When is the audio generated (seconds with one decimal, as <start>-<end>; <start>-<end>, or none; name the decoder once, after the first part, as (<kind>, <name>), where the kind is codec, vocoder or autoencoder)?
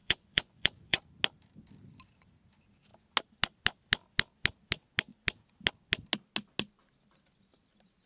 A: 0.0-1.0 (vocoder, Vocos)